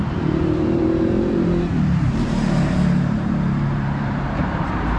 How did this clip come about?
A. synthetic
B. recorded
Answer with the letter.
A